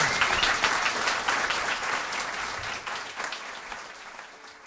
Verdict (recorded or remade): recorded